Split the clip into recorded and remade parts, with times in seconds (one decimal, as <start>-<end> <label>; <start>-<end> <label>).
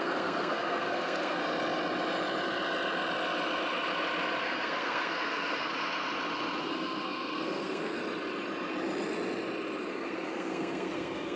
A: 0.0-1.4 remade; 1.4-4.4 recorded; 4.4-5.7 remade; 5.7-6.6 recorded; 6.6-8.0 remade; 8.0-9.9 recorded; 9.9-11.4 remade